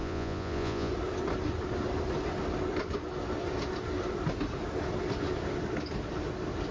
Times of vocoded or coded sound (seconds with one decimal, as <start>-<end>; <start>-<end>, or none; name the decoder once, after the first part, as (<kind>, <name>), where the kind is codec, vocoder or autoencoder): 0.0-0.9 (vocoder, Vocos)